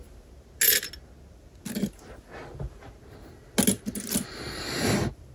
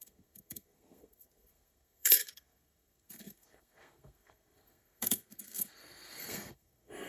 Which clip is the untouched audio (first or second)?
first